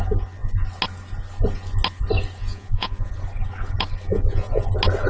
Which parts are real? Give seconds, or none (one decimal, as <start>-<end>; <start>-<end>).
0.0-2.4; 3.1-4.1; 4.6-5.1